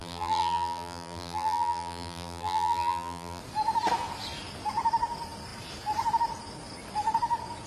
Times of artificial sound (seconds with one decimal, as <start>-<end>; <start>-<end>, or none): 0.0-3.4